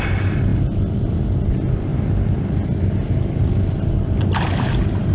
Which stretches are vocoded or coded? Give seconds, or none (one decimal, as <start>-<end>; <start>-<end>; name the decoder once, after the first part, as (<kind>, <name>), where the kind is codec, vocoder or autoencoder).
0.5-1.5 (vocoder, BigVGAN v2); 1.9-5.1